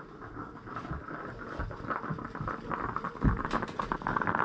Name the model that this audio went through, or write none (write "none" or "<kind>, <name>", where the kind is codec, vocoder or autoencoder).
none